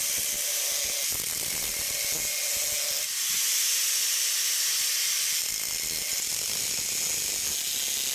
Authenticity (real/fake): real